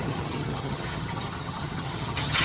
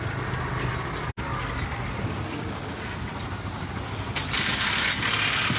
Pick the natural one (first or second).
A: second